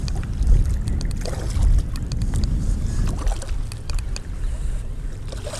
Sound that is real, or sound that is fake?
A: real